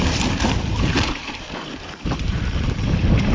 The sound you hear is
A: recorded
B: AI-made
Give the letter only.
B